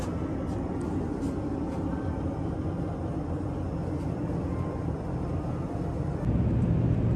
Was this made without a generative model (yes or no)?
yes